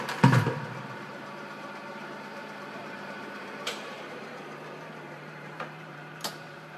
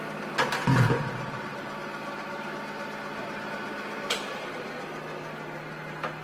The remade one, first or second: first